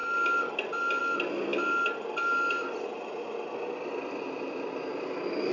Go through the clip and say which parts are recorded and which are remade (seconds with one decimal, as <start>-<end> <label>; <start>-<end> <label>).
0.0-5.5 recorded